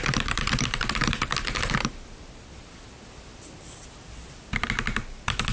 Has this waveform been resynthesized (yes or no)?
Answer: no